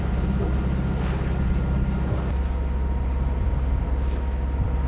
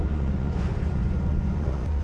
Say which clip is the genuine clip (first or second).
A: first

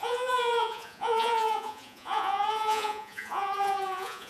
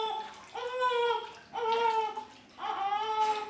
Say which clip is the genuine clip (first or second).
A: second